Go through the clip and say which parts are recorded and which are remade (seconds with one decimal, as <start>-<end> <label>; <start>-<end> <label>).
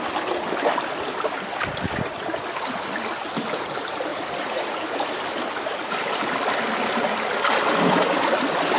0.0-4.1 recorded; 4.1-5.1 remade; 5.1-8.8 recorded